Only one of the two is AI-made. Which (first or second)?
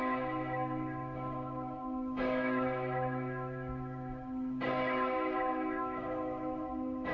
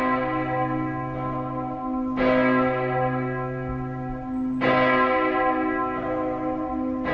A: first